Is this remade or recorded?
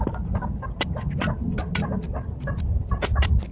recorded